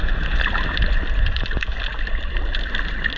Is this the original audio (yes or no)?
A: yes